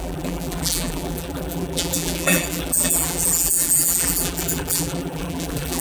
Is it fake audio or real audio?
fake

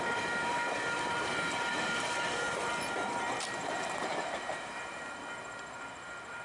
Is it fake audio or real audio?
fake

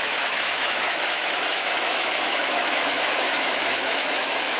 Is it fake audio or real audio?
fake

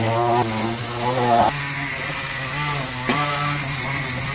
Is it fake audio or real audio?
real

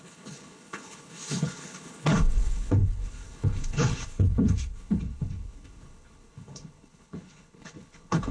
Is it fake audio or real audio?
fake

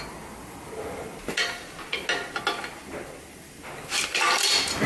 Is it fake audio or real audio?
real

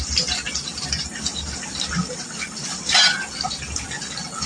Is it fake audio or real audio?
real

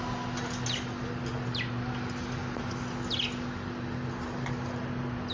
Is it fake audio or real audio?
real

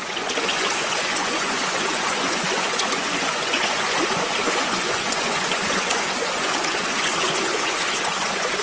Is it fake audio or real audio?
fake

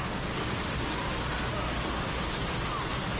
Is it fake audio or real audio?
real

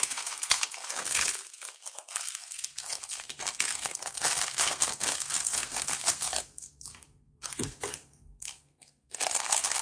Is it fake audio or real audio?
fake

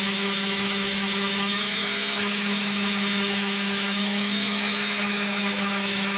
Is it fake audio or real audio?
fake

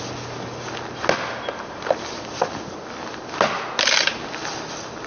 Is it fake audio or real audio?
real